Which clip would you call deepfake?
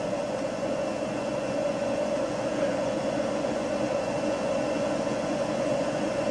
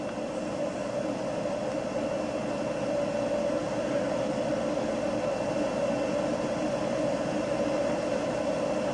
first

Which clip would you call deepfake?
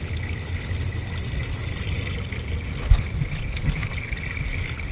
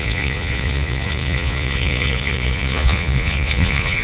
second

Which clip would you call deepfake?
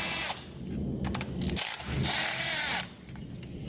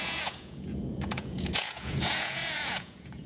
second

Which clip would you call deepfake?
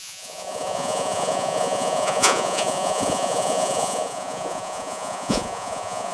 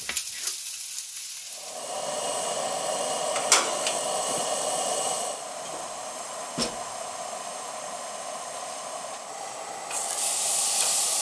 first